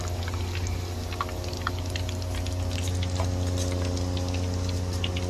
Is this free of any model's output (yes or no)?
yes